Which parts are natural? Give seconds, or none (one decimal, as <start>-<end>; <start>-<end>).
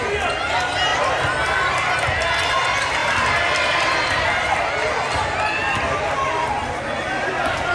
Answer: 0.0-0.9; 1.9-3.0; 4.6-5.6; 7.3-7.7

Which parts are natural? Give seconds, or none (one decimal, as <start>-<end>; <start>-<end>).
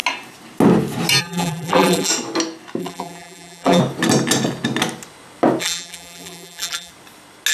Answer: 0.0-1.2; 2.1-2.8; 3.8-5.6; 6.9-7.5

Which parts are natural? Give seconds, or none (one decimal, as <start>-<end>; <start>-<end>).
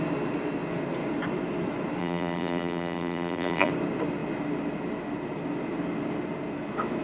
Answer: 0.0-2.0; 3.7-7.0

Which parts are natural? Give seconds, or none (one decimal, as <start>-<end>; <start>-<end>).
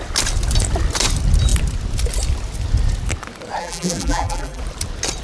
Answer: 0.0-3.6; 4.6-5.2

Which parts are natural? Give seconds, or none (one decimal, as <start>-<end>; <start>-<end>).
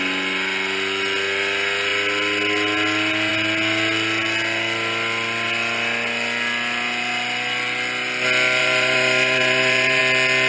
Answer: 0.0-8.6; 10.0-10.5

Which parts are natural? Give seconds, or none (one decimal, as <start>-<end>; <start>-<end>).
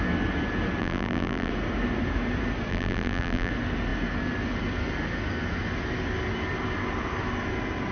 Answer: 0.0-0.8; 1.5-2.7; 3.5-7.9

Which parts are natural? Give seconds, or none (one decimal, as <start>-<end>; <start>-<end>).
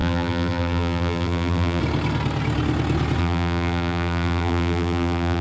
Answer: 1.8-3.2